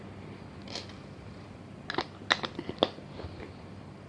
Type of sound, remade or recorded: recorded